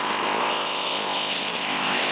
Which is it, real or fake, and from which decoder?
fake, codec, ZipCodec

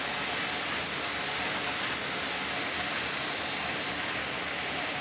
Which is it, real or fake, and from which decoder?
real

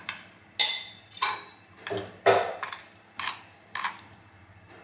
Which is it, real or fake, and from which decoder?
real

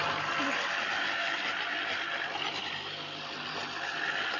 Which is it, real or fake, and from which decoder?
real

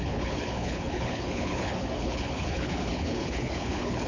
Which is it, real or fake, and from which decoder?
fake, codec, HILCodec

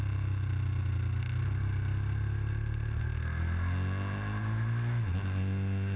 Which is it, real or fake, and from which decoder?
real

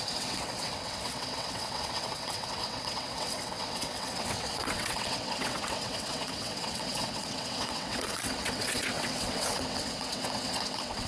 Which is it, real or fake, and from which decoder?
fake, vocoder, WaveNeXt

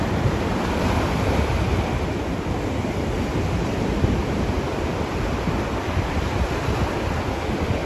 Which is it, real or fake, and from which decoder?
real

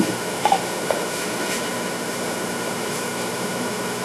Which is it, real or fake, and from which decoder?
fake, autoencoder, DAC-VAE